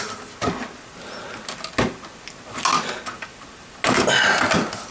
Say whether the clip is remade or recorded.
recorded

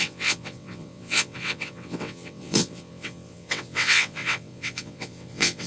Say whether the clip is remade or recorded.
remade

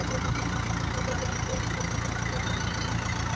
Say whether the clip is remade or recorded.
recorded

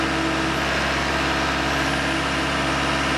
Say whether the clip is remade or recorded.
recorded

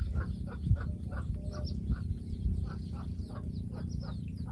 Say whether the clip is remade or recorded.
recorded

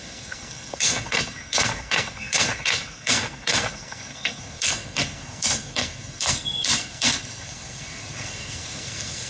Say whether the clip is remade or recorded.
remade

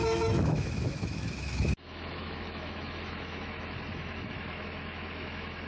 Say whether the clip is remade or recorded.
remade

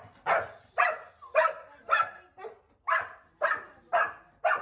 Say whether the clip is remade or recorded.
recorded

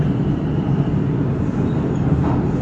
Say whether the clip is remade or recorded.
recorded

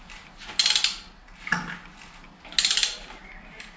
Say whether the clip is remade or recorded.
recorded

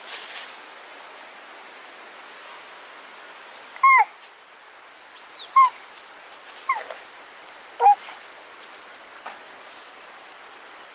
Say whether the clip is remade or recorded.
recorded